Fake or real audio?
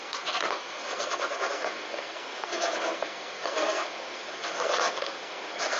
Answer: fake